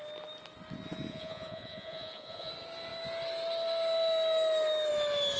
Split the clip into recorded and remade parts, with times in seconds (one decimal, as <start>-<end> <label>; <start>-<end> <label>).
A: 0.0-1.1 recorded; 1.1-2.5 remade; 2.5-5.4 recorded